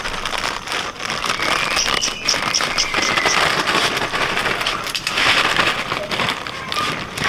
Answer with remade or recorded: recorded